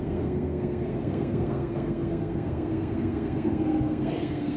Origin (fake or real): fake